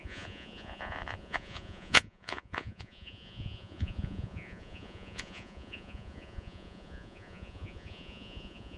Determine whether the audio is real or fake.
fake